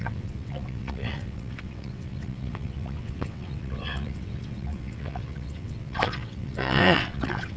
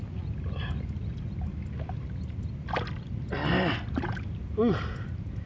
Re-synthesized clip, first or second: first